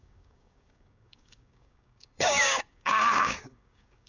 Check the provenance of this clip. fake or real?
fake